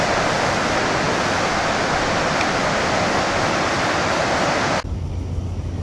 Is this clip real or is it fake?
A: real